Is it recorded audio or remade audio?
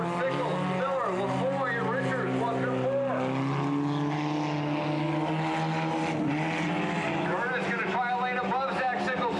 recorded